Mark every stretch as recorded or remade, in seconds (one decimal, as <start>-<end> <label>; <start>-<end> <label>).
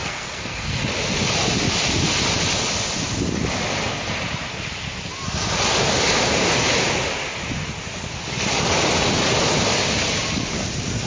0.0-0.8 remade; 0.8-11.1 recorded